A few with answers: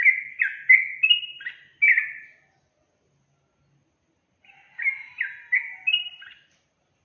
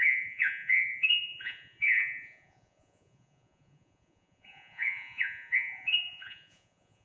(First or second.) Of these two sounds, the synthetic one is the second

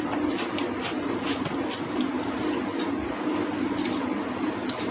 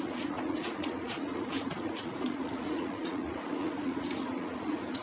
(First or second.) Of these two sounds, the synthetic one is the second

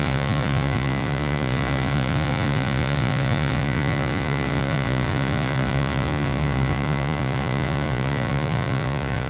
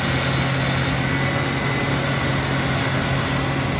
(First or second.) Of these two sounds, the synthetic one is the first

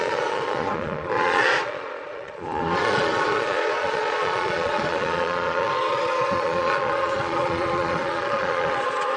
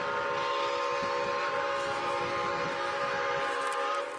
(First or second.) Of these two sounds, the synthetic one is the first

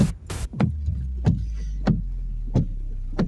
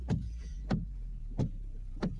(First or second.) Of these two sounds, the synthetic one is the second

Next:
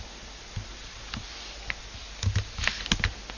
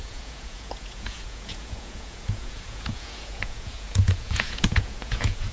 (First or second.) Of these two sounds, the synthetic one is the second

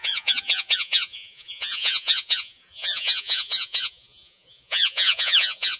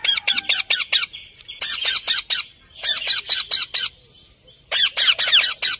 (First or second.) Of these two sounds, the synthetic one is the first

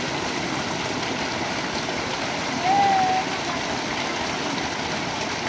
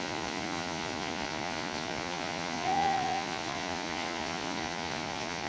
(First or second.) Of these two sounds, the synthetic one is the second